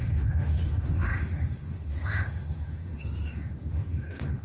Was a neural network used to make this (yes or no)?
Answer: yes